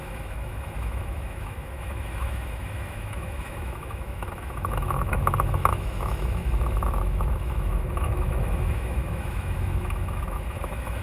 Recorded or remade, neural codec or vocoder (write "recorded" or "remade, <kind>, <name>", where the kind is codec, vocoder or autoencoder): remade, autoencoder, DAC-VAE